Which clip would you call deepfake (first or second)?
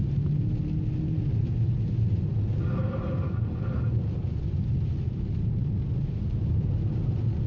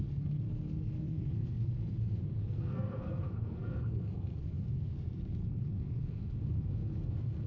second